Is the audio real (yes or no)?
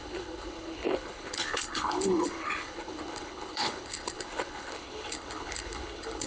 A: no